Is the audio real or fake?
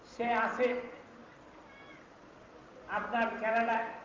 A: real